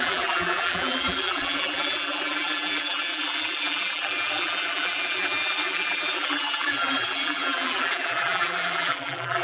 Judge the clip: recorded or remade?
remade